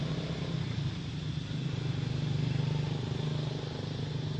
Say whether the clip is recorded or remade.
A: recorded